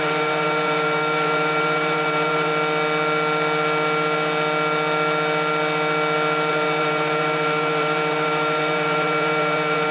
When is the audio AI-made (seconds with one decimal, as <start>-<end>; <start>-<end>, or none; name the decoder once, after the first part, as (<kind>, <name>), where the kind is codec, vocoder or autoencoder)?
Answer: 0.0-2.5 (vocoder, BigVGAN v2); 6.5-9.9

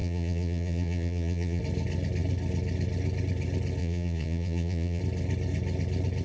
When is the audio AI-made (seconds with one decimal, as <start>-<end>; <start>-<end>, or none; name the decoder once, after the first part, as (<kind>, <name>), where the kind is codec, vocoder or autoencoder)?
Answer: 0.0-1.6 (vocoder, Vocos); 3.8-5.0

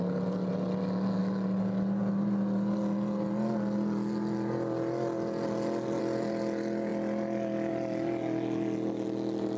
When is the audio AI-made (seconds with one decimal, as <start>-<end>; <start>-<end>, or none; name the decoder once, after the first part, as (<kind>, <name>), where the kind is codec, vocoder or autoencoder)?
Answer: none

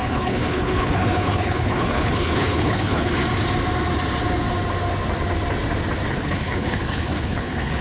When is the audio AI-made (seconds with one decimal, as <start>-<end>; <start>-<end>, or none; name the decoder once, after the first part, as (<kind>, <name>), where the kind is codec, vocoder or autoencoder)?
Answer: 0.0-3.2 (codec, HILCodec); 6.1-7.8

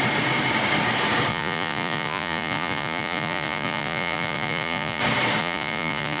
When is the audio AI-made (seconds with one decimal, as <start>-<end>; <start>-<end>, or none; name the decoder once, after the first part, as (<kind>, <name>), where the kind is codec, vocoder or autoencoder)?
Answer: 1.3-5.0 (vocoder, Vocos); 5.4-6.2

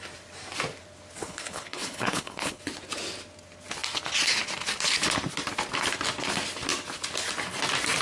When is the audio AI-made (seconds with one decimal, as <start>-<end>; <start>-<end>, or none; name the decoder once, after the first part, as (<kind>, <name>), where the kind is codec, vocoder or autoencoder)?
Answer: 1.2-2.6 (codec, HILCodec)